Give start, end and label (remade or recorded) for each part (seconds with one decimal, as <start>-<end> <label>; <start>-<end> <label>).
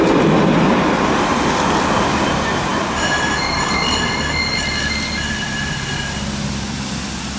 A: 0.0-7.4 recorded